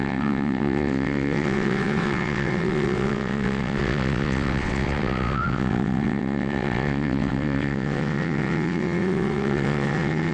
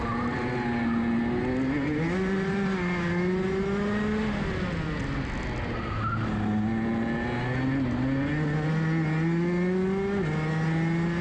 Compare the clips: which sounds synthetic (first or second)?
first